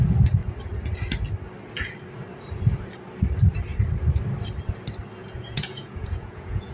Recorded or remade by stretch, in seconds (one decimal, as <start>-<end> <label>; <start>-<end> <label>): 0.0-5.2 recorded; 5.2-6.7 remade